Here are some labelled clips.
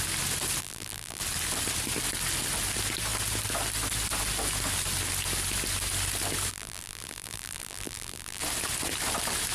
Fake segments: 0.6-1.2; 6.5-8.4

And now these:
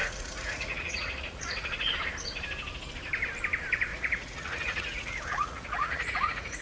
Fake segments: 0.0-1.9; 3.9-6.6

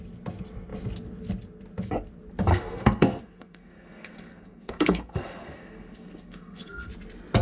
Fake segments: 2.5-6.9

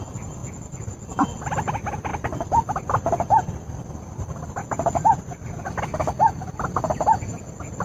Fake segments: none

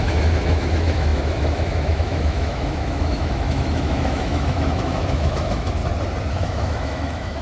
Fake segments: 0.0-5.8; 6.3-7.4

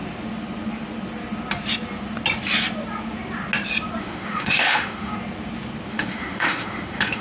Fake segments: 4.0-5.1; 5.9-7.2

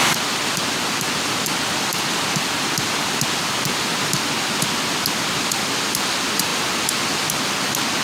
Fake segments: none